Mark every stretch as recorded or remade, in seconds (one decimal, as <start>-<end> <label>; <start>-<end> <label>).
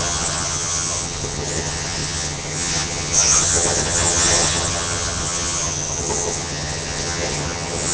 0.0-7.9 remade